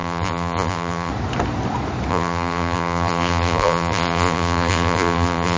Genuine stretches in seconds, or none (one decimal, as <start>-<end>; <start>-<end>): 1.1-2.1